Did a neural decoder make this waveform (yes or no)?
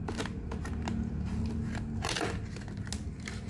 no